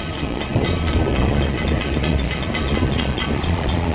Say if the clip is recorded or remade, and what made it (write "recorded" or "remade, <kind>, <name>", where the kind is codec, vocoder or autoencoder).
remade, vocoder, Vocos